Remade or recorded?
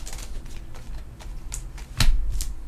recorded